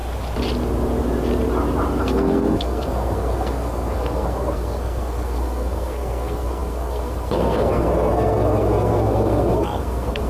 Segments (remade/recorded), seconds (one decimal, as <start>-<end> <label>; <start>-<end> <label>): 0.0-2.0 recorded; 2.0-10.3 remade